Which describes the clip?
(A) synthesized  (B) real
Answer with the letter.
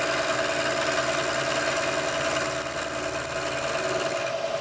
B